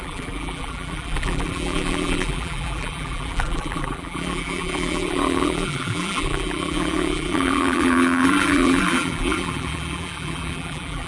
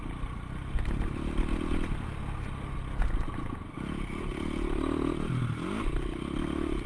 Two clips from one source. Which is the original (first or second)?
second